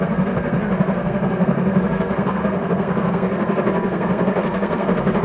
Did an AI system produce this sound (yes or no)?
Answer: yes